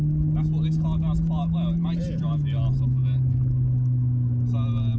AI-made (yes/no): no